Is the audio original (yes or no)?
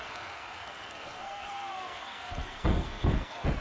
no